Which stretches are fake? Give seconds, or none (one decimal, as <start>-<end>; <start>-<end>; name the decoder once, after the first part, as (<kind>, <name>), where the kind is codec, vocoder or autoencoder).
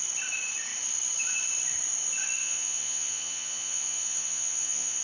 2.4-5.0 (vocoder, Vocos)